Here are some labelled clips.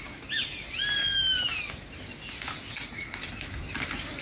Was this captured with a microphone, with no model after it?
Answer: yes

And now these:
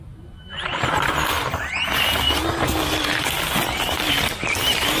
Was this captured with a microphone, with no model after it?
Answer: yes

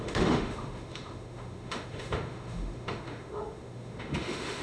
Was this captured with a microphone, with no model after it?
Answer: no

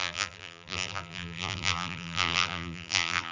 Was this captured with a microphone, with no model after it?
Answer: no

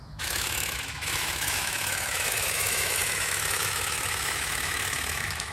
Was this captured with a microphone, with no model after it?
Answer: no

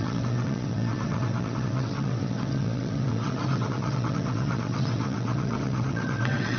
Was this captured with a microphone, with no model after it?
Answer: no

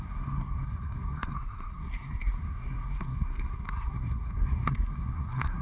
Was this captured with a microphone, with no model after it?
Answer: no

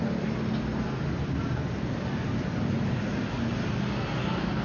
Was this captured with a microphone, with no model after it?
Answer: yes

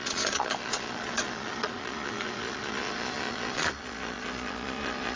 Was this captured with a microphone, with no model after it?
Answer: no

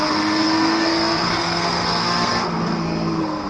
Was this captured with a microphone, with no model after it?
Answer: no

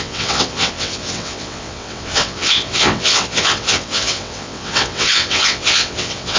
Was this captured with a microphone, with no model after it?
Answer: no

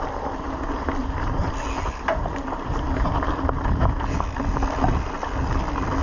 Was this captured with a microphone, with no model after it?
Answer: yes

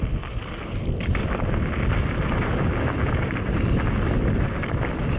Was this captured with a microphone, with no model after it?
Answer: yes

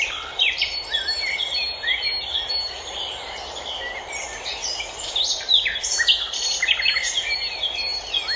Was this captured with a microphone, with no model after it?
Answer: no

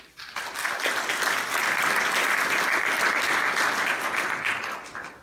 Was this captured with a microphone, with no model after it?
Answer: yes